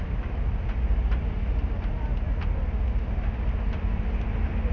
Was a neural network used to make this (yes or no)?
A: no